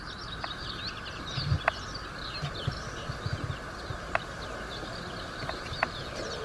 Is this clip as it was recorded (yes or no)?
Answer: yes